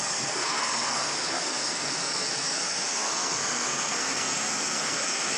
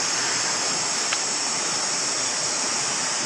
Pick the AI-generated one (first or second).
first